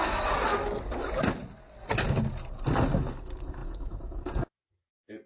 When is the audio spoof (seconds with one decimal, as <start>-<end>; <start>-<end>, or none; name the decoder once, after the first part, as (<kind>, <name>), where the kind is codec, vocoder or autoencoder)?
3.6-5.3 (vocoder, Vocos)

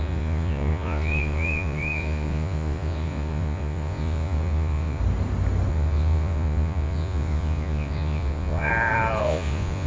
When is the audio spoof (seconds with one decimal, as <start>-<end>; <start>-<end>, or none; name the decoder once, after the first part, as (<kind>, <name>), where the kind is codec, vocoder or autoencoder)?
0.0-5.0 (vocoder, Vocos); 5.7-8.7; 9.2-9.9

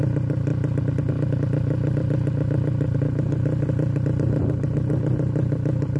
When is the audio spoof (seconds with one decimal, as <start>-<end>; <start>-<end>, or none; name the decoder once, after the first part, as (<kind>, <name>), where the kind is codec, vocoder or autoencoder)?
none

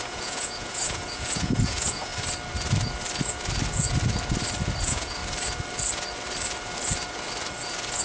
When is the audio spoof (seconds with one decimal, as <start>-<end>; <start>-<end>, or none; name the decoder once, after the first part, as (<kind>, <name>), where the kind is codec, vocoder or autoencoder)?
0.0-2.1 (vocoder, Vocos); 4.8-5.2

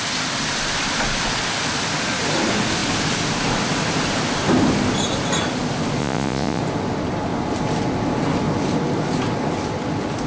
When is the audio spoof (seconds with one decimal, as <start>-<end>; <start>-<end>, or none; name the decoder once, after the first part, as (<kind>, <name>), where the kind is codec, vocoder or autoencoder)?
6.0-6.6 (vocoder, Vocos)

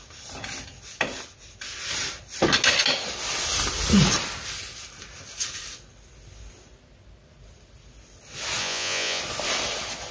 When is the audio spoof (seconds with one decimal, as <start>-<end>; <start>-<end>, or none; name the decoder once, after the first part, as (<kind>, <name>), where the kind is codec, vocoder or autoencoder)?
8.6-9.2 (vocoder, Vocos)